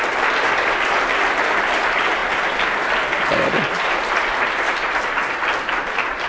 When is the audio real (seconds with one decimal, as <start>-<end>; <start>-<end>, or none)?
0.0-6.3